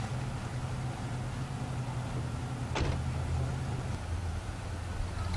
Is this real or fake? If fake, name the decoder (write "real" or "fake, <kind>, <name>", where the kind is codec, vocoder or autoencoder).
real